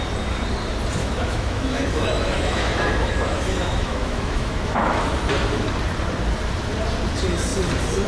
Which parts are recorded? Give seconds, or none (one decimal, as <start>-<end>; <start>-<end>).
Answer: 0.0-1.0; 5.1-8.1